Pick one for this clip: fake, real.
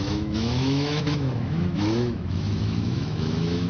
fake